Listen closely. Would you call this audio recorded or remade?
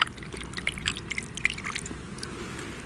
recorded